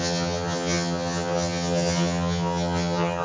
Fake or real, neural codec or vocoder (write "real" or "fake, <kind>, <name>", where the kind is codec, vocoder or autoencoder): fake, vocoder, HiFi-GAN